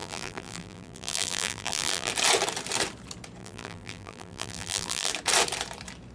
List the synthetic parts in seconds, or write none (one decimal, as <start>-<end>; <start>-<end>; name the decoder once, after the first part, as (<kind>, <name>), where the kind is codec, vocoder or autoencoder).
0.0-2.1 (vocoder, BigVGAN v2); 3.4-5.1